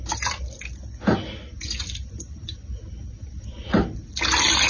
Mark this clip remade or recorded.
recorded